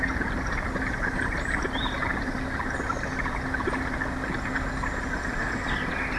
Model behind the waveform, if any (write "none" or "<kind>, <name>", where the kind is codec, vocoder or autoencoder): none